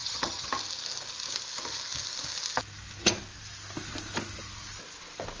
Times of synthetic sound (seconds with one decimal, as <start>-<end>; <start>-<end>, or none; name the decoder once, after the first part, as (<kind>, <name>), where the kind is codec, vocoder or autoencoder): 0.0-0.5 (vocoder, HiFi-GAN)